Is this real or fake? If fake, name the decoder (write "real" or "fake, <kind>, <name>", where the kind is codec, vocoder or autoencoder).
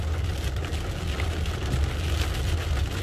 real